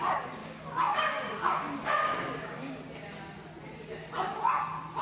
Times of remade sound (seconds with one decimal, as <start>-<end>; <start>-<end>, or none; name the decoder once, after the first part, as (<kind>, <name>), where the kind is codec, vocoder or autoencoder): 0.4-2.8 (codec, DAC)